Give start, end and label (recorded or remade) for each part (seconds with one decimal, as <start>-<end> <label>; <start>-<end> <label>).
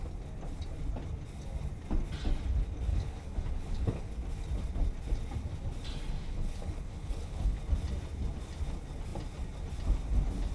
0.0-2.9 recorded; 2.9-4.1 remade; 4.1-6.2 recorded; 6.2-7.6 remade; 7.6-10.5 recorded